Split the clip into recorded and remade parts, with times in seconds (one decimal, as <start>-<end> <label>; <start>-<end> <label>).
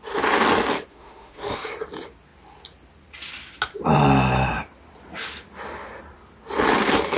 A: 0.0-0.9 recorded; 0.9-1.7 remade; 1.7-7.2 recorded